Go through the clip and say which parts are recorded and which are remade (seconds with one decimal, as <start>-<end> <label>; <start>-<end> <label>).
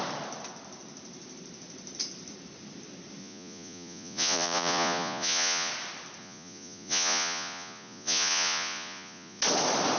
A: 0.0-3.2 recorded; 3.2-5.7 remade; 5.7-6.2 recorded; 6.2-9.4 remade; 9.4-10.0 recorded